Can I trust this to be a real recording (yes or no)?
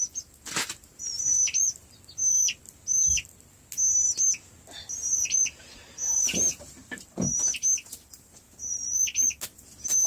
yes